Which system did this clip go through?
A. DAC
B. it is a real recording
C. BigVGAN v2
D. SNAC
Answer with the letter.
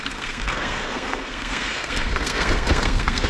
D